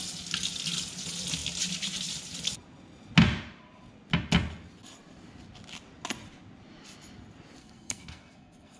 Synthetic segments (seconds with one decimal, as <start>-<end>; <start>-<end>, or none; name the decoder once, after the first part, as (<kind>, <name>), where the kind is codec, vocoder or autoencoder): 7.6-8.8 (codec, SNAC)